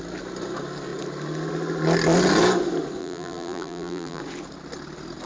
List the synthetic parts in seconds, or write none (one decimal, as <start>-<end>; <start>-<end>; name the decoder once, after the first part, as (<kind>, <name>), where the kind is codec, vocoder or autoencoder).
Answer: 3.0-4.2 (vocoder, BigVGAN v2)